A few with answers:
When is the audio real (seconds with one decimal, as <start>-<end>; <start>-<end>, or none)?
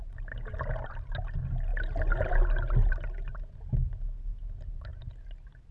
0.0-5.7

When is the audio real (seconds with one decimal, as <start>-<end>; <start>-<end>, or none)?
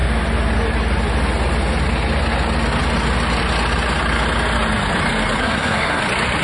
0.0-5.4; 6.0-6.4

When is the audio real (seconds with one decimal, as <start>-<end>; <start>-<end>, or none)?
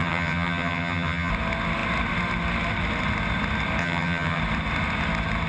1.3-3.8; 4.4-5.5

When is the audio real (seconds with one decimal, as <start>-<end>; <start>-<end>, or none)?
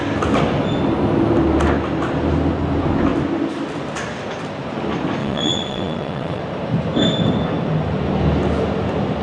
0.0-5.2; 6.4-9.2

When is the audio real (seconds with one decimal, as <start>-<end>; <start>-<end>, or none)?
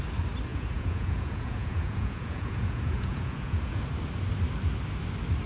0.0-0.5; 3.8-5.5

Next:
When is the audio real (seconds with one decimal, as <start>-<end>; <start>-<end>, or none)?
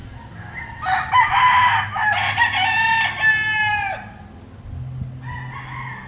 0.0-6.1